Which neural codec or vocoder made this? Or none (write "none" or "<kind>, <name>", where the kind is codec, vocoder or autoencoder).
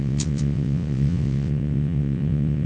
vocoder, WaveNeXt